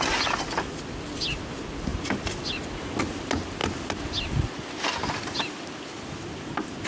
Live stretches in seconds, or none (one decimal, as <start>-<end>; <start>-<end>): 0.0-6.9